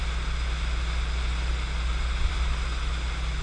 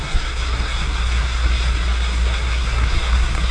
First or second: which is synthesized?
second